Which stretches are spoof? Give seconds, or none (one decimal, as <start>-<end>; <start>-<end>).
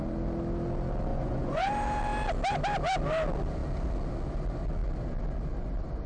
1.1-1.7